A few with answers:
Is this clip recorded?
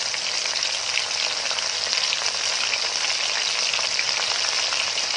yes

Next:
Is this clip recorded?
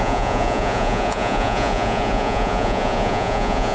no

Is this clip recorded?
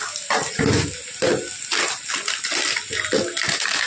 yes